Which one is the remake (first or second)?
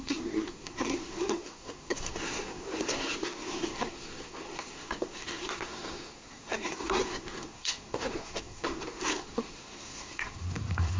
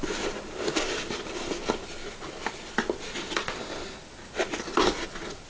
first